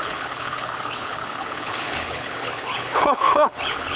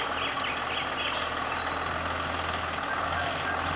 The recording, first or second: second